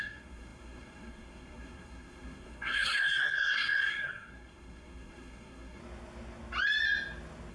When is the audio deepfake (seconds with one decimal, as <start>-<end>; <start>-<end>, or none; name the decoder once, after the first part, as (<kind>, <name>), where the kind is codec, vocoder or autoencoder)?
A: 0.0-5.8 (codec, SNAC)